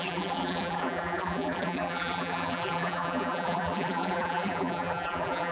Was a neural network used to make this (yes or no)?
yes